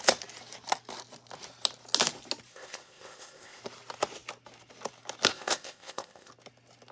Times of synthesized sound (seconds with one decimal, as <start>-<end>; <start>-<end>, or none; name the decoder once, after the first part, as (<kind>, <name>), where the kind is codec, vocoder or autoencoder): 2.5-3.6 (codec, ZipCodec); 5.3-6.3